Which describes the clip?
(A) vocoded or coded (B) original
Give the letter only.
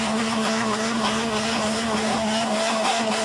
A